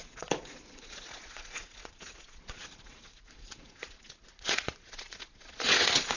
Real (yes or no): no